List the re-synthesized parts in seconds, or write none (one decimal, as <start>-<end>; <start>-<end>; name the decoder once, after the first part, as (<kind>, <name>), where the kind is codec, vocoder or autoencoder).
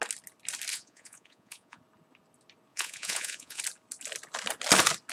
0.7-1.8 (vocoder, Vocos); 2.7-3.6